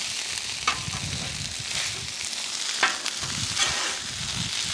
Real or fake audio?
real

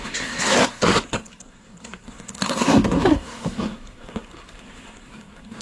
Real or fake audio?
fake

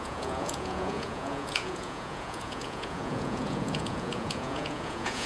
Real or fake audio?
fake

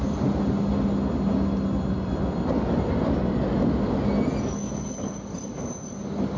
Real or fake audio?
real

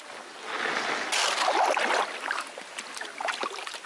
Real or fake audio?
real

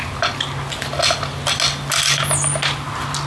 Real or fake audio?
real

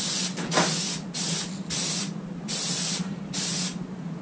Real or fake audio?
real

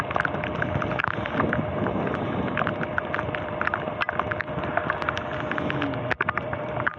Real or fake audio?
real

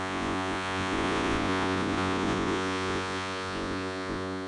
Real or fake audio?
fake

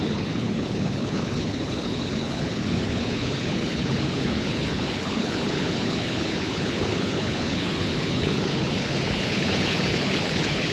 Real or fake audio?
fake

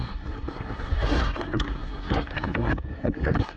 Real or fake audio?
fake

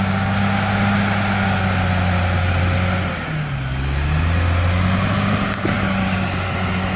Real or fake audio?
real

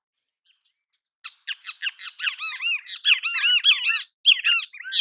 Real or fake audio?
real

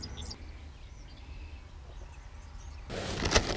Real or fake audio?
real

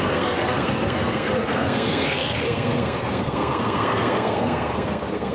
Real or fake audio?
fake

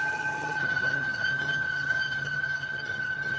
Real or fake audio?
fake